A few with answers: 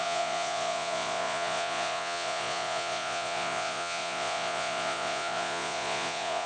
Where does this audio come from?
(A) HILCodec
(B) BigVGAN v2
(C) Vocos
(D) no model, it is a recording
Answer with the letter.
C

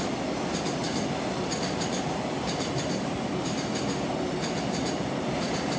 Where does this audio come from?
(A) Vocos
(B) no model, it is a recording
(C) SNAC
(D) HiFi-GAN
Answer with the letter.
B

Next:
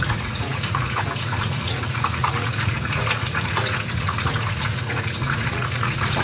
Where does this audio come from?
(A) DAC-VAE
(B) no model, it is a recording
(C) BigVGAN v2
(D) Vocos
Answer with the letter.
D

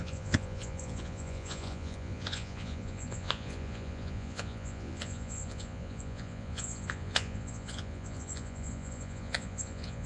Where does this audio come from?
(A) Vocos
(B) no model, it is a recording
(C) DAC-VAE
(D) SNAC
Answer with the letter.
A